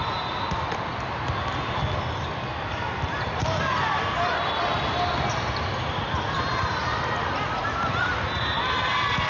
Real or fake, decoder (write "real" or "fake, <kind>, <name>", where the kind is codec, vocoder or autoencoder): real